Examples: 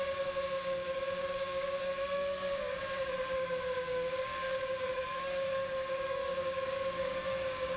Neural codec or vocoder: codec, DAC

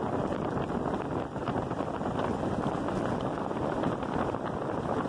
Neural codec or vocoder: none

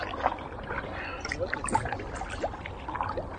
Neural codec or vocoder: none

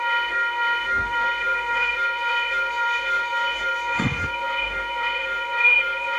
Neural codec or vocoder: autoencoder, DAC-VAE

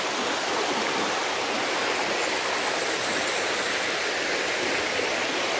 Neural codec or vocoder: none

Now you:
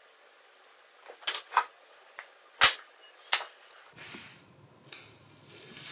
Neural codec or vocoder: none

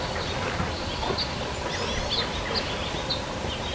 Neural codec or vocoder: none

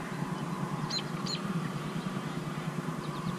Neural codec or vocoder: vocoder, BigVGAN v2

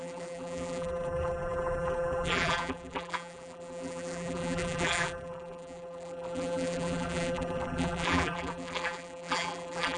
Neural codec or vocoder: vocoder, BigVGAN v2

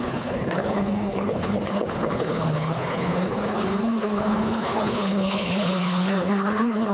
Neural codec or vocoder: codec, HILCodec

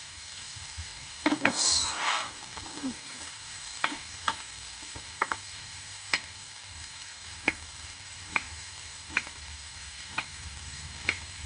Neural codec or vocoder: codec, DAC